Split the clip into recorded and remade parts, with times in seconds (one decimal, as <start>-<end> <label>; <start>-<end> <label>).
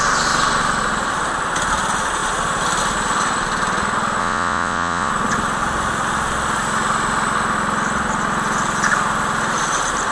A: 0.0-4.2 recorded; 4.2-5.1 remade; 5.1-10.1 recorded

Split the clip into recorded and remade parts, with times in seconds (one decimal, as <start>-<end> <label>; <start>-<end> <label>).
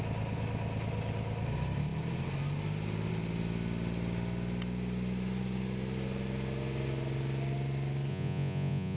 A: 0.0-8.1 recorded; 8.1-9.0 remade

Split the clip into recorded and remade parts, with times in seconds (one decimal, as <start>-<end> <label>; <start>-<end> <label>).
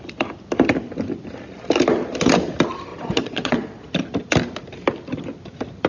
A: 0.0-2.9 recorded; 2.9-3.9 remade; 3.9-5.9 recorded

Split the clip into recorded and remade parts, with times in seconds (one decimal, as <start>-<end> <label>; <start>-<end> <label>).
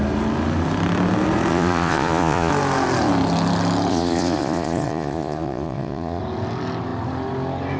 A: 0.0-1.5 recorded; 1.5-2.5 remade; 2.5-3.9 recorded; 3.9-6.2 remade; 6.2-7.8 recorded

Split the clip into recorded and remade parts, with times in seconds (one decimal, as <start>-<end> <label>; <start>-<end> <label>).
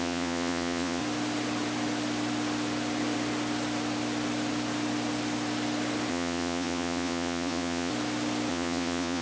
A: 0.0-1.0 remade; 1.0-6.1 recorded; 6.1-7.9 remade; 7.9-8.5 recorded; 8.5-9.2 remade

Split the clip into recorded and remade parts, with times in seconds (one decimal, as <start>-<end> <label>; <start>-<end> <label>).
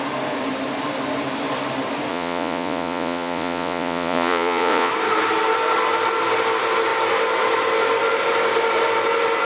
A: 0.0-2.1 recorded; 2.1-4.9 remade; 4.9-9.4 recorded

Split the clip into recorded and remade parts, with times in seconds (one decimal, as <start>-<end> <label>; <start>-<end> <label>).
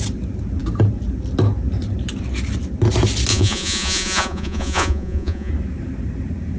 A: 0.0-3.3 recorded; 3.3-5.5 remade; 5.5-6.6 recorded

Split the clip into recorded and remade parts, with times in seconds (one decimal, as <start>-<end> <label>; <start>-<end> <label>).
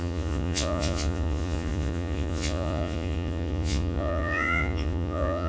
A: 0.0-5.5 remade